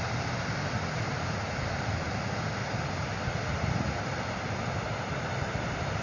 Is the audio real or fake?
real